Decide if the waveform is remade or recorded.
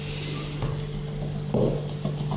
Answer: recorded